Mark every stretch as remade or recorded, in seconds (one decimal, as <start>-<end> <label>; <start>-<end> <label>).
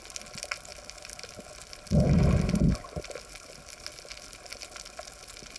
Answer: 0.0-5.6 recorded